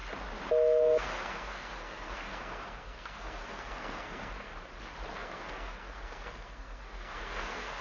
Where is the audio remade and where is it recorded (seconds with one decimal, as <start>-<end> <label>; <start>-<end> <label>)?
0.0-0.8 recorded; 0.8-4.5 remade; 4.5-5.1 recorded; 5.1-7.8 remade